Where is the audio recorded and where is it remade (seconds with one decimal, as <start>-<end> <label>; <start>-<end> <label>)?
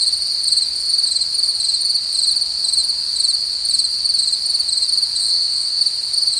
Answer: 0.0-5.2 recorded; 5.2-5.8 remade; 5.8-6.4 recorded